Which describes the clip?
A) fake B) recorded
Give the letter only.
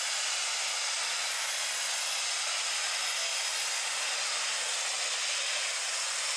B